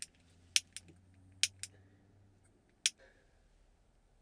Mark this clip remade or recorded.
recorded